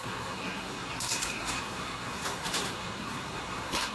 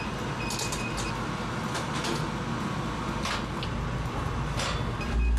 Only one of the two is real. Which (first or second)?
second